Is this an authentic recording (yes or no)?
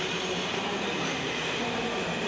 yes